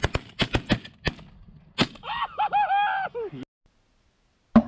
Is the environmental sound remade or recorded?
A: recorded